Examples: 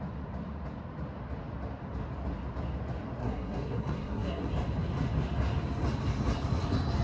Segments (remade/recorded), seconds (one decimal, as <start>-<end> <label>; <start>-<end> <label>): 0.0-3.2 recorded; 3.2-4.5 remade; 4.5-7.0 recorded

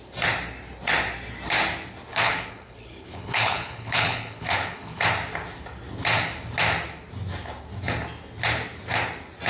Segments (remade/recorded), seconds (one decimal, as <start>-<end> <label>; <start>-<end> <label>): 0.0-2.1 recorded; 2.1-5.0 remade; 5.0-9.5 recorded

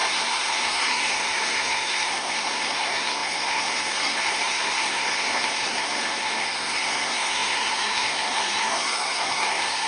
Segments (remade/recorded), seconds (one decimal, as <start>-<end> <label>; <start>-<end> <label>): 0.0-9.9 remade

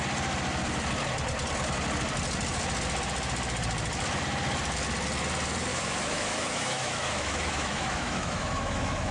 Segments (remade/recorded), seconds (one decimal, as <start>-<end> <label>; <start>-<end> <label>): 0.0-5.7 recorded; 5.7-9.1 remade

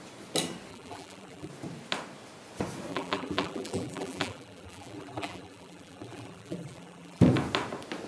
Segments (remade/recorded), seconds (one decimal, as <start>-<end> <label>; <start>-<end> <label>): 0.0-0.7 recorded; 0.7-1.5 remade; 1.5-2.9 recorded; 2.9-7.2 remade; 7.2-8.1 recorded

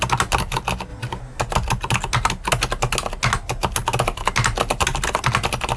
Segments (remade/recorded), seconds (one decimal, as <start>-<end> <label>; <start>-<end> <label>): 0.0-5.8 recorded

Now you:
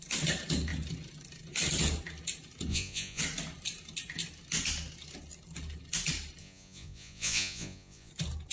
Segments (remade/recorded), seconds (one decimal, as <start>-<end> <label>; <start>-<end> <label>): 0.0-2.7 recorded; 2.7-3.2 remade; 3.2-6.4 recorded; 6.4-8.1 remade; 8.1-8.5 recorded

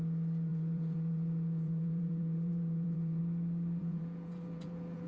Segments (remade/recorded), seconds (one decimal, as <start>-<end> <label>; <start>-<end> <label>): 0.0-0.5 recorded; 0.5-3.2 remade; 3.2-3.8 recorded; 3.8-5.1 remade